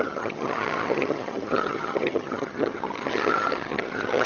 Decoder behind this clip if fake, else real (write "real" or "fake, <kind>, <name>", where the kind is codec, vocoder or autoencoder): fake, vocoder, HiFi-GAN